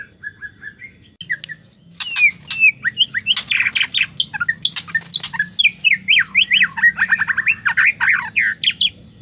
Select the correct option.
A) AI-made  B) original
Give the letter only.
B